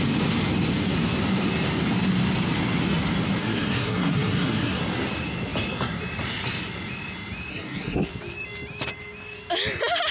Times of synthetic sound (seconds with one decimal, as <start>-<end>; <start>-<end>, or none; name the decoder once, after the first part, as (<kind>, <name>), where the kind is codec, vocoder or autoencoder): 3.4-4.8 (codec, SNAC); 7.5-8.1